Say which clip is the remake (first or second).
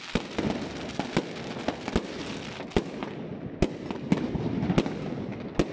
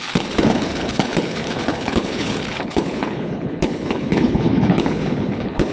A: second